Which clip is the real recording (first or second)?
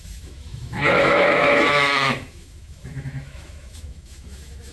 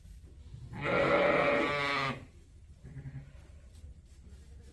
second